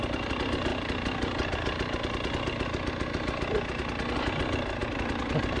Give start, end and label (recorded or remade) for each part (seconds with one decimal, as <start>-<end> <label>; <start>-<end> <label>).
0.0-5.6 recorded